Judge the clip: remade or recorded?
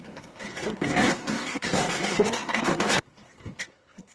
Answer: remade